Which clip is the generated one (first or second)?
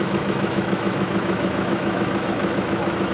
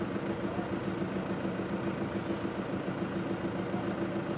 first